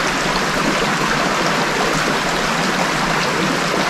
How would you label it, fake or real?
real